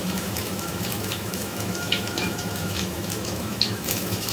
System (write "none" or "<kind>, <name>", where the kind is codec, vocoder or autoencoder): autoencoder, DAC-VAE